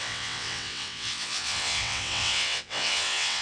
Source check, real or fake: fake